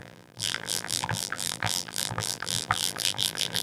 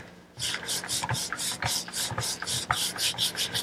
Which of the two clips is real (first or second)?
second